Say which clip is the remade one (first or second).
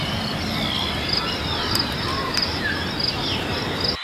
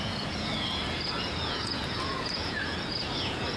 second